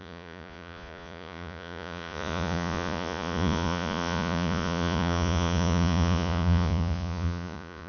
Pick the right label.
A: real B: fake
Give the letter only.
B